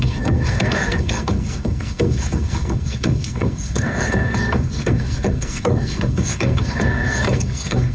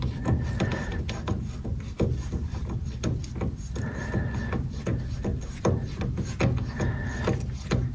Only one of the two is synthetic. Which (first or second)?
first